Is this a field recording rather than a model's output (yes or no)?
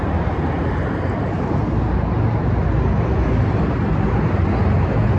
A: yes